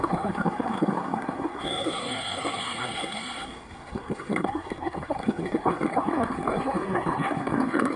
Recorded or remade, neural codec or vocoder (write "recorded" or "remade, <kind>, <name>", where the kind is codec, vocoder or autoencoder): remade, codec, SNAC